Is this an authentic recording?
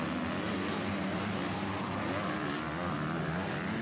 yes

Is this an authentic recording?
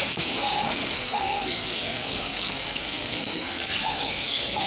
no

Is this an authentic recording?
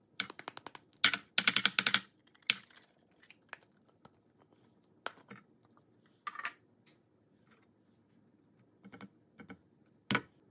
yes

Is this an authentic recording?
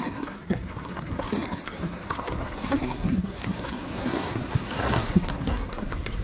no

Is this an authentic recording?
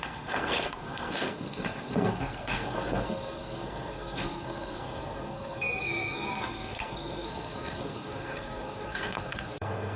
no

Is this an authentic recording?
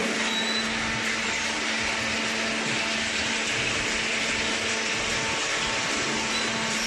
yes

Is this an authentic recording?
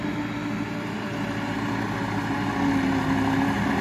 yes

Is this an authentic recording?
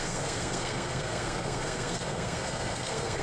no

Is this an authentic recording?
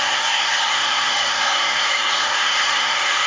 no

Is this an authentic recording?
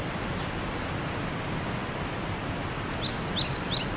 yes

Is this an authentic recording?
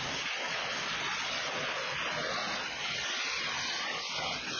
yes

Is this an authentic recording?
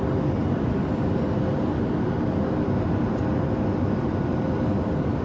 yes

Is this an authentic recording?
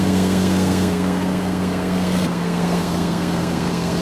no